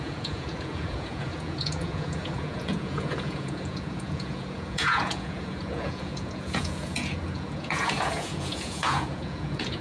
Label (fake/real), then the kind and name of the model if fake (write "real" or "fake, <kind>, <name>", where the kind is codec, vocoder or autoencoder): fake, vocoder, Vocos